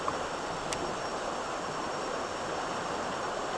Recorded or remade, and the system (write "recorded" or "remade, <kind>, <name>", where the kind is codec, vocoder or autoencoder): recorded